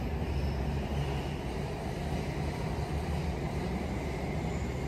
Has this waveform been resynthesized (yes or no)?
no